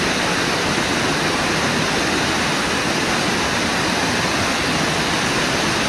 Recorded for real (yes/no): yes